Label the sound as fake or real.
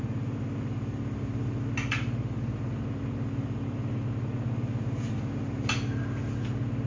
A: real